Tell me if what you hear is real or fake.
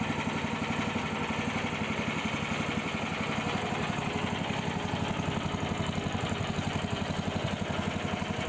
real